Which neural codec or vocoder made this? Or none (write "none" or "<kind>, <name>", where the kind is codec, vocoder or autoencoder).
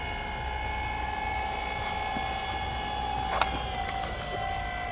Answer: none